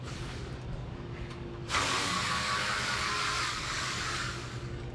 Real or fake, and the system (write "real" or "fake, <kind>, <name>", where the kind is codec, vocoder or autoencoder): fake, codec, DAC